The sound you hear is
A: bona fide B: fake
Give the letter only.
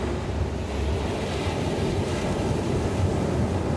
A